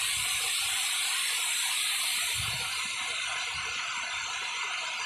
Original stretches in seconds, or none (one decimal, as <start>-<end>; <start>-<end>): 0.0-5.1